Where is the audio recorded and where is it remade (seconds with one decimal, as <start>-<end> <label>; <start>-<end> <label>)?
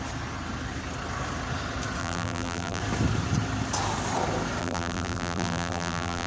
0.0-2.0 recorded; 2.0-2.8 remade; 2.8-4.6 recorded; 4.6-6.3 remade